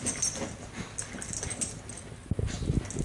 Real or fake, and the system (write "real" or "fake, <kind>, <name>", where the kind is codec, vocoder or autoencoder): real